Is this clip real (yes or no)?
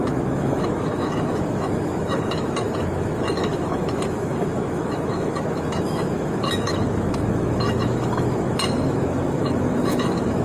no